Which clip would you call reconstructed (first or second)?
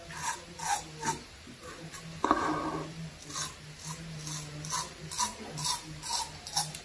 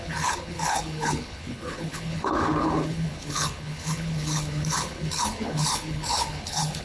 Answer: second